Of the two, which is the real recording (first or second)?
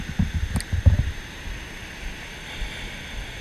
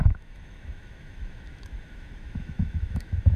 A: first